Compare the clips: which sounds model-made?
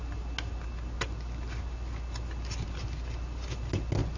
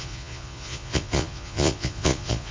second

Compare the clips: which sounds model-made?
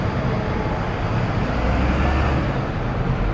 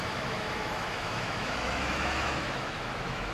second